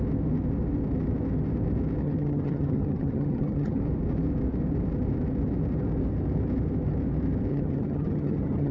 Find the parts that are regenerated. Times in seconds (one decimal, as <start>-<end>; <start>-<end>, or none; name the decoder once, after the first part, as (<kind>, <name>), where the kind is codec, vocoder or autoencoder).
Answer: 2.0-3.8 (vocoder, HiFi-GAN); 7.5-8.7